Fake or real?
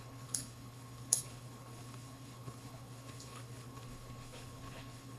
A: fake